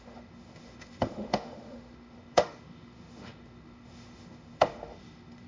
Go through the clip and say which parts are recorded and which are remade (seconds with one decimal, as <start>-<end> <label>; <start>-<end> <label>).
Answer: 0.0-5.5 remade